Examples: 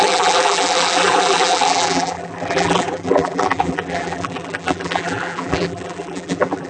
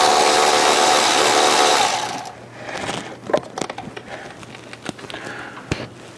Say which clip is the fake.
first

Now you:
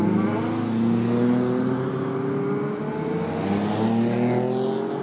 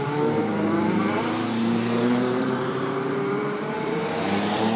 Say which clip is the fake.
second